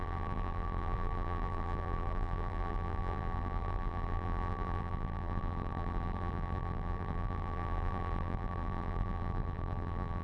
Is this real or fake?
fake